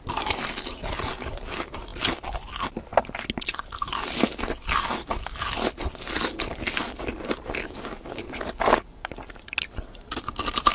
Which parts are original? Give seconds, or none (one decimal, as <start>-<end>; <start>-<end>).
0.0-7.6; 9.0-10.7

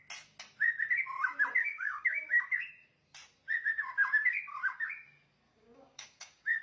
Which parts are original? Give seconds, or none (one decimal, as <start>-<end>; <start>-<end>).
0.0-1.6; 2.4-5.5

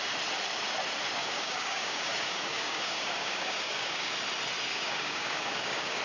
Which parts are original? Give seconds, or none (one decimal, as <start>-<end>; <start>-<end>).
0.0-1.2; 4.1-4.7

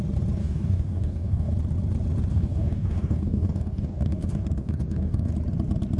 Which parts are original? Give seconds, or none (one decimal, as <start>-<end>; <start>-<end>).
0.0-0.4; 1.5-2.3; 5.3-6.0

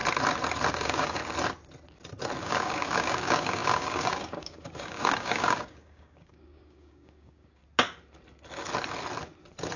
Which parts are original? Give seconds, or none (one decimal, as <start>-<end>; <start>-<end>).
0.0-0.7; 1.2-2.4; 7.6-9.8

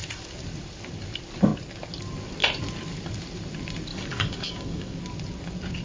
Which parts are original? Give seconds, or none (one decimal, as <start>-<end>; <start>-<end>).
0.0-3.9; 5.0-5.8

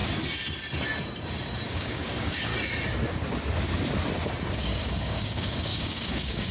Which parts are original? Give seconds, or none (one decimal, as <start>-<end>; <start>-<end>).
0.0-1.7; 2.5-4.5

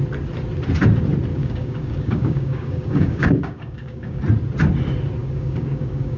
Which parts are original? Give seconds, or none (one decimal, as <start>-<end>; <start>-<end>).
0.0-1.3; 4.2-5.2